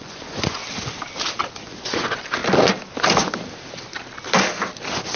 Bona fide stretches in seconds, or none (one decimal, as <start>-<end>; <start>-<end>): 0.6-1.5; 2.4-5.2